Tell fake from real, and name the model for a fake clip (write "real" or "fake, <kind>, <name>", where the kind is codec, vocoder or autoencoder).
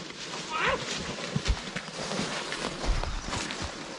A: real